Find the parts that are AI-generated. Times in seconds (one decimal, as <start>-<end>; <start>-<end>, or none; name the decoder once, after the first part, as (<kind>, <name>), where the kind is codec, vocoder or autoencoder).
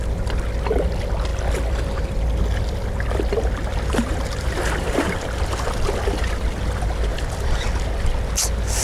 1.3-6.0 (vocoder, BigVGAN v2); 7.1-7.9